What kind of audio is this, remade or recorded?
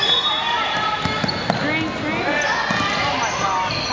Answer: recorded